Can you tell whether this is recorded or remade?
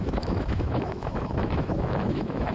remade